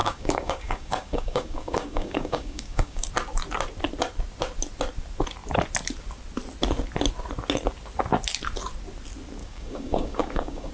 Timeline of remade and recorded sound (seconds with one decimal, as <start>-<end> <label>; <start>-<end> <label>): 0.0-3.1 remade; 3.1-9.4 recorded; 9.4-10.7 remade